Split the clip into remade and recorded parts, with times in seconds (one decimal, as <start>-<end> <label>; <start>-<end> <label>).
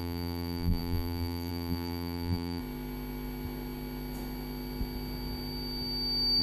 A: 0.0-2.6 remade; 2.6-6.4 recorded